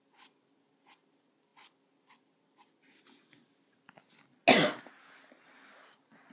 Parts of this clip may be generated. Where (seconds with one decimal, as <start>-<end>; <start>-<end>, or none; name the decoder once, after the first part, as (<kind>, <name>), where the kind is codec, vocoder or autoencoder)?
none